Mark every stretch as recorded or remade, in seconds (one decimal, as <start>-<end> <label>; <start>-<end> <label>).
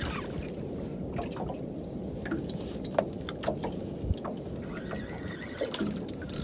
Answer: 0.0-6.4 recorded